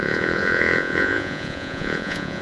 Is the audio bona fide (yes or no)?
no